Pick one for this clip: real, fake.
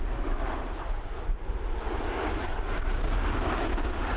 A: real